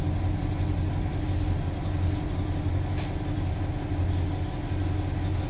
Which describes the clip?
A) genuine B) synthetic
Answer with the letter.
A